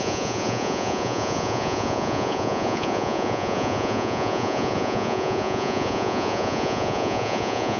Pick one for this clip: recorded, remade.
remade